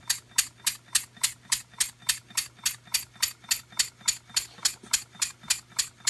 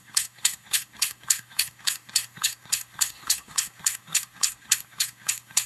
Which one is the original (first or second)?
first